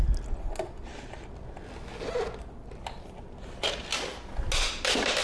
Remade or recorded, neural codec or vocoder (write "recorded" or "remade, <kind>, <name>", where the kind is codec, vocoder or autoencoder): recorded